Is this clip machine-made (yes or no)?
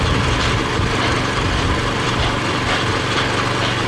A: yes